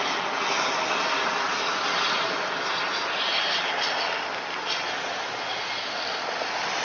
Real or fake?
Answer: real